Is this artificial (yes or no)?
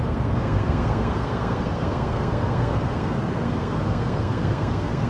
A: yes